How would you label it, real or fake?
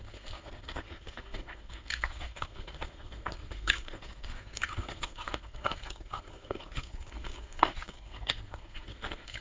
fake